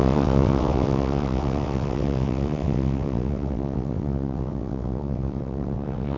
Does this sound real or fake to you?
fake